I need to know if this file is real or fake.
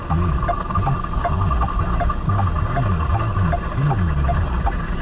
real